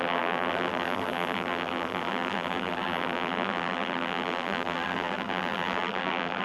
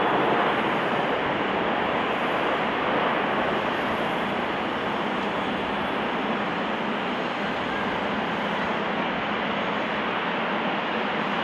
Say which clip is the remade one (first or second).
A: first